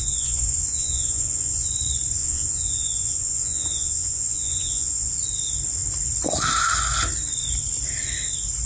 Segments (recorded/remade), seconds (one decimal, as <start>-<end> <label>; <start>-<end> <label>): 0.0-1.7 remade; 1.7-2.2 recorded; 2.2-5.1 remade; 5.1-8.7 recorded